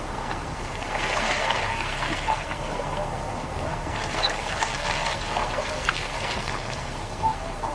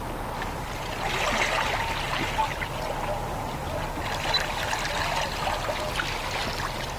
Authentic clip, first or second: second